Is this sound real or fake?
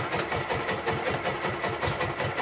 real